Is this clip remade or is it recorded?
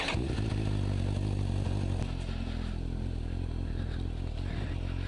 recorded